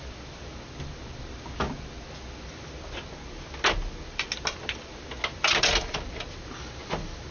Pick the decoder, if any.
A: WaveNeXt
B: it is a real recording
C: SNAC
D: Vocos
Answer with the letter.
B